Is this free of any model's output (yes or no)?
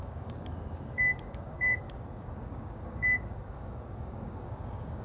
no